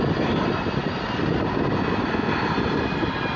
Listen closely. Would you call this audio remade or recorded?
recorded